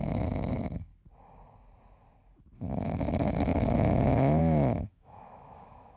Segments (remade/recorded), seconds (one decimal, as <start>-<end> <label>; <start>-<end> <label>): 0.0-0.9 remade; 0.9-3.1 recorded; 3.1-6.0 remade